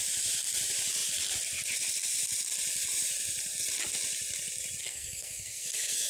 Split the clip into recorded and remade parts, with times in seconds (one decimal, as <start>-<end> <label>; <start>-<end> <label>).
0.0-4.8 recorded; 4.8-6.1 remade

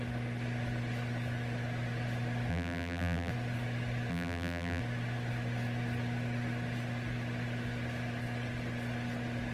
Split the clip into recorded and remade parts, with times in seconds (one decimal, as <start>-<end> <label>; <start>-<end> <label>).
0.0-2.5 recorded; 2.5-3.3 remade; 3.3-4.1 recorded; 4.1-4.8 remade; 4.8-9.5 recorded

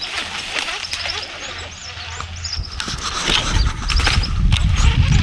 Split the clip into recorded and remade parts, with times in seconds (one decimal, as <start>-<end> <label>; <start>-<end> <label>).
0.0-5.2 recorded

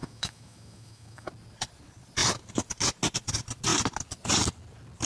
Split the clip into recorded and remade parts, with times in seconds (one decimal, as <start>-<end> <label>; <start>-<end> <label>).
0.0-1.3 remade; 1.3-5.1 recorded

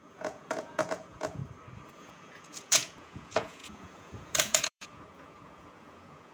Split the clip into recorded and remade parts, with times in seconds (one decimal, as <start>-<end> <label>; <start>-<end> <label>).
0.0-1.4 remade; 1.4-1.9 recorded; 1.9-6.3 remade

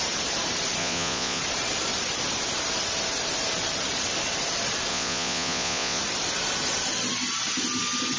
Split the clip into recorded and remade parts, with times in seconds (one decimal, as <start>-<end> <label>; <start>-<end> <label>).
0.0-0.8 recorded; 0.8-1.4 remade; 1.4-4.9 recorded; 4.9-6.0 remade; 6.0-8.2 recorded

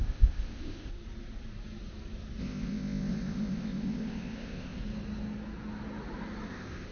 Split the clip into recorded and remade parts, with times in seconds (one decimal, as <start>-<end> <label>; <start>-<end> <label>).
0.0-0.9 remade; 0.9-2.4 recorded; 2.4-4.8 remade; 4.8-6.5 recorded; 6.5-6.9 remade